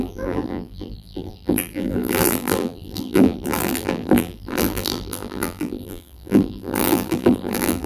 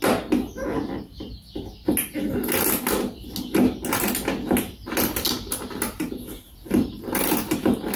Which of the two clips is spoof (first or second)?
first